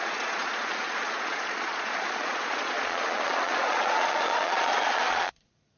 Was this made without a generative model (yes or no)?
no